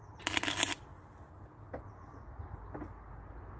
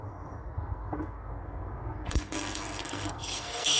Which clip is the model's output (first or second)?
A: second